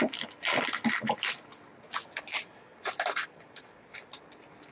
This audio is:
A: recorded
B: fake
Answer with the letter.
A